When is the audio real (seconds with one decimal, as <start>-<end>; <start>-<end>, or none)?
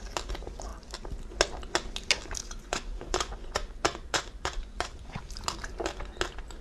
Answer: 0.0-2.4; 5.2-6.6